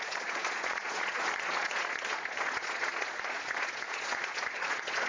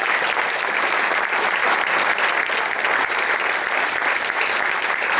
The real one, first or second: second